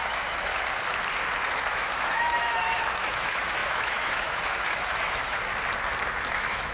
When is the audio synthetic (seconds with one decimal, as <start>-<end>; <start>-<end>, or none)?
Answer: 0.0-0.5; 1.7-5.4; 6.3-6.7